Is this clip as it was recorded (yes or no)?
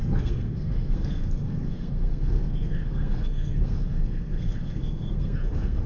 no